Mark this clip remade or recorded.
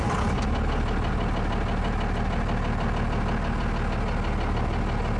recorded